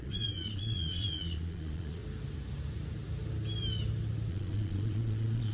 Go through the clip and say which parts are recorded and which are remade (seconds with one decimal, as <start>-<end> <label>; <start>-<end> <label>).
0.0-2.0 remade; 2.0-4.3 recorded; 4.3-5.5 remade